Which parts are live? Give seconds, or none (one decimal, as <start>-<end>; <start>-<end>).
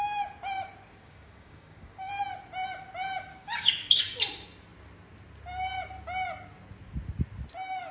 0.0-0.8; 2.1-3.3; 4.0-7.9